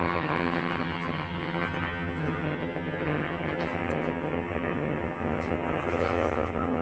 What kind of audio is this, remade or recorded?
remade